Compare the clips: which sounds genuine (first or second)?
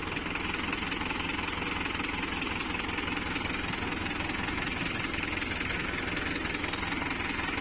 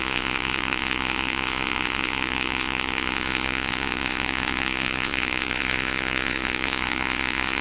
first